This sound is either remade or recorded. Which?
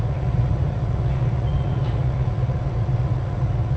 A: remade